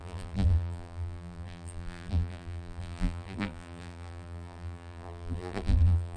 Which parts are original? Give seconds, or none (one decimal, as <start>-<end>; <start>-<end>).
none